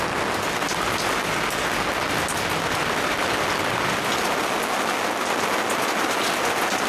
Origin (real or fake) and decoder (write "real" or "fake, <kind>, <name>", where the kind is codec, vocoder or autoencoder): real